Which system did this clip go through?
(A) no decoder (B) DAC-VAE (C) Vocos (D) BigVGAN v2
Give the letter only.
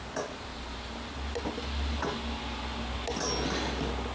A